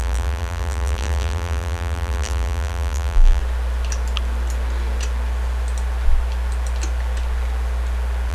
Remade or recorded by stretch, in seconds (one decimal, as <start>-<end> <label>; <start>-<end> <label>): 0.0-3.4 remade; 3.4-8.3 recorded